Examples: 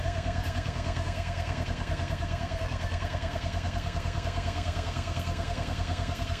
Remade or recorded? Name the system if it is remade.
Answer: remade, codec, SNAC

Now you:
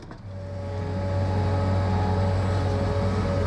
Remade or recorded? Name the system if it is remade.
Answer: recorded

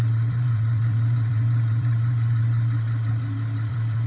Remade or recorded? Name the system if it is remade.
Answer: remade, vocoder, BigVGAN v2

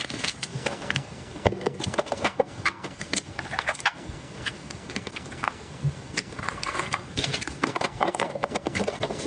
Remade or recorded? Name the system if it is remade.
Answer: remade, codec, SNAC